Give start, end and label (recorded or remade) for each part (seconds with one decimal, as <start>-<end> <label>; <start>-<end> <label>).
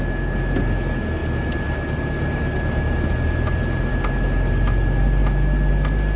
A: 0.0-6.2 recorded